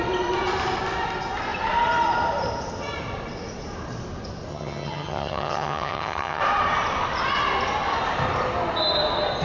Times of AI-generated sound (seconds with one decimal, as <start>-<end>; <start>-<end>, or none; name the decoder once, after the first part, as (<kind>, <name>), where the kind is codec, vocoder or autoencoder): 4.5-6.4 (vocoder, HiFi-GAN)